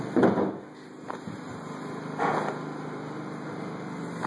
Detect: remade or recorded recorded